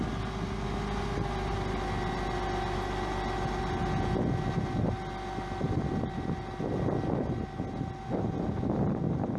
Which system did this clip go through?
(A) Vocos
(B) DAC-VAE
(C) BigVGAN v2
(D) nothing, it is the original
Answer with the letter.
D